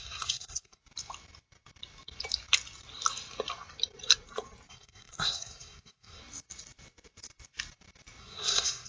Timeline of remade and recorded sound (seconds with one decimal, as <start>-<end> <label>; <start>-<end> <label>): 0.0-0.8 remade; 0.8-4.7 recorded; 4.7-6.2 remade; 6.2-8.2 recorded; 8.2-8.9 remade